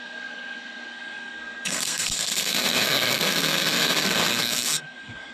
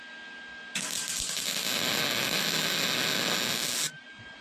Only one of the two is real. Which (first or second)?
second